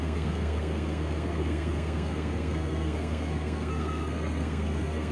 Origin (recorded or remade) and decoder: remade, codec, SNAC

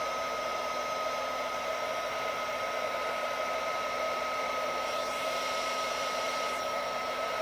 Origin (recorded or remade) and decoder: remade, vocoder, BigVGAN v2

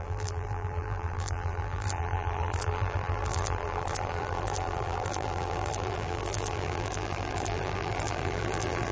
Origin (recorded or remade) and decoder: remade, vocoder, BigVGAN v2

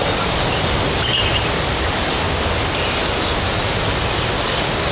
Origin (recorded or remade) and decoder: recorded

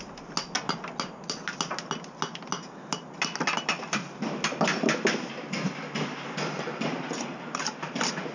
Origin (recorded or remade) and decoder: recorded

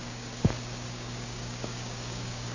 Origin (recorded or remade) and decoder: remade, codec, DAC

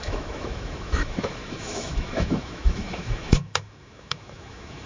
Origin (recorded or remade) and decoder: remade, autoencoder, DAC-VAE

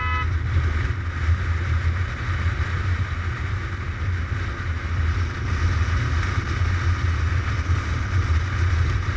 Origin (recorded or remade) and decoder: recorded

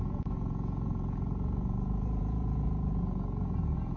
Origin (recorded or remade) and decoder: remade, vocoder, Vocos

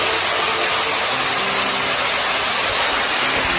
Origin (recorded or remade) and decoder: recorded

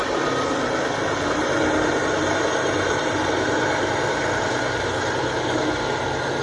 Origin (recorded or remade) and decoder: recorded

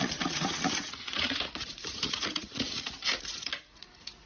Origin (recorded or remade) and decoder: remade, vocoder, Vocos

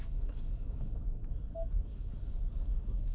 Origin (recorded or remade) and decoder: remade, codec, DAC